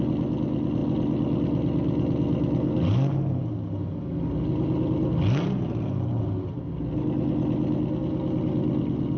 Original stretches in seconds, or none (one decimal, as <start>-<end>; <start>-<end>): 0.0-9.2